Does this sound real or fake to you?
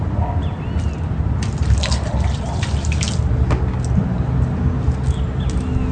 real